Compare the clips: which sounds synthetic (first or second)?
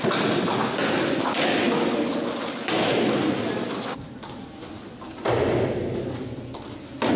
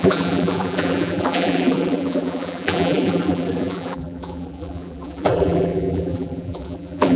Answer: second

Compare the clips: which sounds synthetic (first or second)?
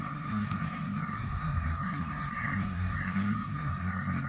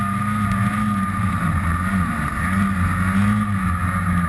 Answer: first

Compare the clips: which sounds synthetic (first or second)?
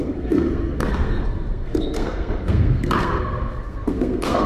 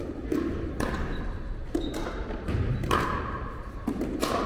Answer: first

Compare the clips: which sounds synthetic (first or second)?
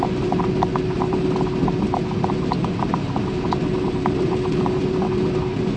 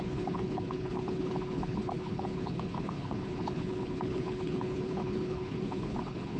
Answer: second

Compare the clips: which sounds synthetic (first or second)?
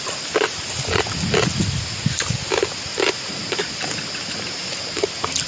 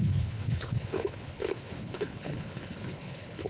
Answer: second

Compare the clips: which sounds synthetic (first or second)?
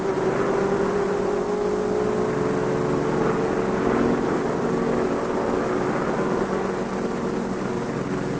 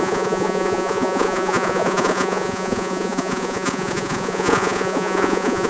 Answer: second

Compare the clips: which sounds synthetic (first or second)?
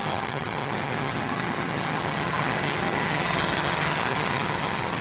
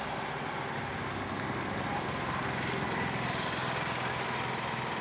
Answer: first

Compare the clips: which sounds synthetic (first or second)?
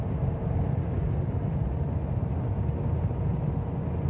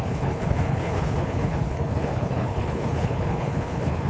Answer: second